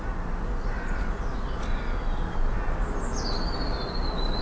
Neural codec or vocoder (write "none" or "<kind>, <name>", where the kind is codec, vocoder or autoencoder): none